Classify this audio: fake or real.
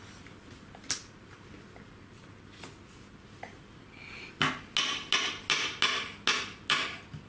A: real